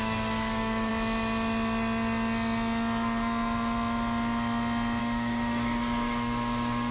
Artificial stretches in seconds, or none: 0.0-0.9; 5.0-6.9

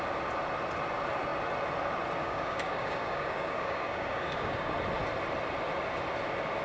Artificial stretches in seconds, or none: 2.2-4.7

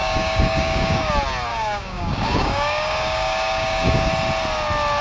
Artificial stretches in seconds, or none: 0.0-1.1; 1.5-4.1

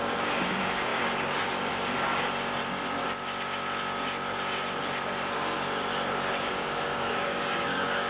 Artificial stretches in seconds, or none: 0.0-2.1; 6.4-8.1